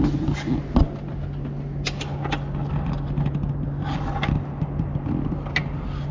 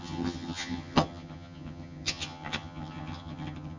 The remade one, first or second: second